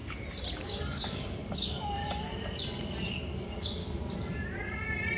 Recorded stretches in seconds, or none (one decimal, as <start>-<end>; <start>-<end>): 0.0-0.6; 2.0-3.1; 3.8-5.2